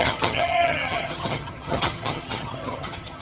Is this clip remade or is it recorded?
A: remade